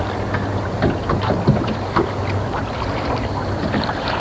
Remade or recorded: recorded